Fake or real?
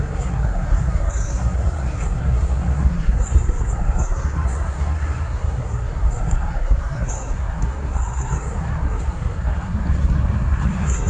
fake